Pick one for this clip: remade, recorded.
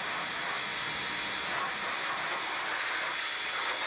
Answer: recorded